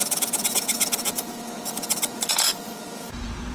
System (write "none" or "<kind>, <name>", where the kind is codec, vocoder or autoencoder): vocoder, Vocos